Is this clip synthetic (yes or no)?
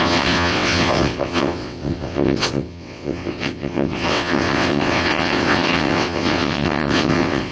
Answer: yes